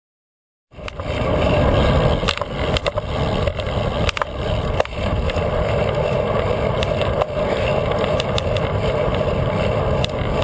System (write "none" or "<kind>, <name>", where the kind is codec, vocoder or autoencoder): none